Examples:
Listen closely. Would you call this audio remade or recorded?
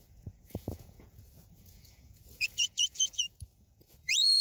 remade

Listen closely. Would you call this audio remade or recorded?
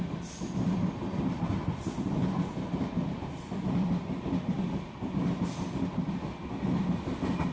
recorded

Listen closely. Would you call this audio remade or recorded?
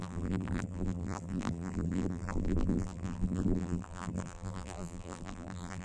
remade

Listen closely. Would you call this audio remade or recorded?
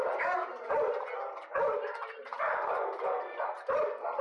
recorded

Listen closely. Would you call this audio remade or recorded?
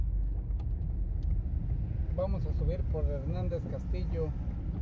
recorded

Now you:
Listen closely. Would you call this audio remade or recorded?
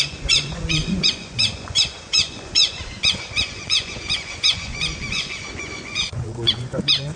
remade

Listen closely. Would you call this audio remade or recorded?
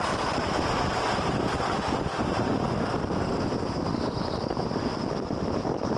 recorded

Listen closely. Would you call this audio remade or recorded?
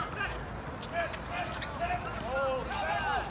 recorded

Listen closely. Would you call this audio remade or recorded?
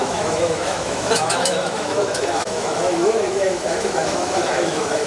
remade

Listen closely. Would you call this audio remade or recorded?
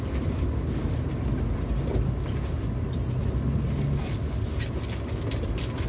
recorded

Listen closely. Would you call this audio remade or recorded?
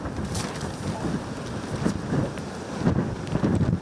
recorded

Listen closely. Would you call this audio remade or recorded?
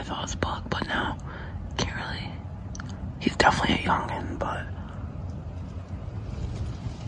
recorded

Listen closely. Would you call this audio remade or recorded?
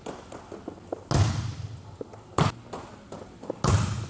recorded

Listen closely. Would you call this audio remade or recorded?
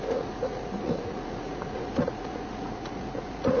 remade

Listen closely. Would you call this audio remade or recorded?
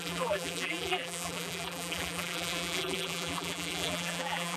remade